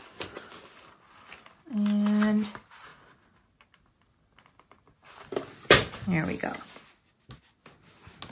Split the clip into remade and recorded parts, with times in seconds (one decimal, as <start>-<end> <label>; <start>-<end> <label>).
0.0-8.3 recorded